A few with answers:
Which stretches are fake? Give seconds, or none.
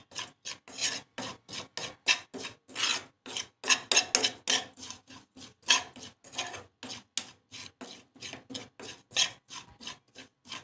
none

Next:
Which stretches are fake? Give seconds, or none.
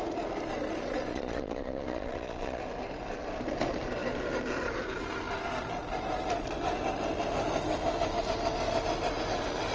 1.1-2.6